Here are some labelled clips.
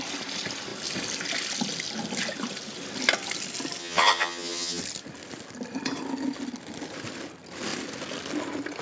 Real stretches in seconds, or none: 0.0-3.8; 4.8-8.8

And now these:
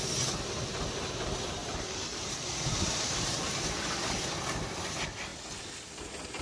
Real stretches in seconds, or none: 0.0-1.6; 4.2-6.4

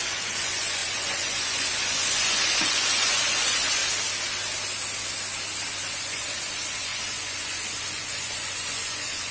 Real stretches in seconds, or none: 3.8-6.0

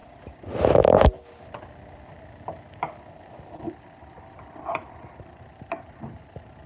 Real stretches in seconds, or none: 0.0-6.7